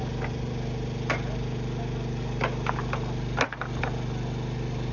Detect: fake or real real